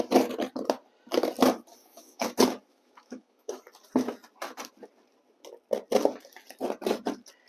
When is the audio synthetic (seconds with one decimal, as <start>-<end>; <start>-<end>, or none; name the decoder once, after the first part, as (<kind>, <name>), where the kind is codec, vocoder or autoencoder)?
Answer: 1.8-2.3 (autoencoder, DAC-VAE); 2.7-3.6